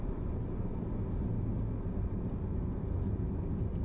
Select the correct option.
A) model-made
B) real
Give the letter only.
B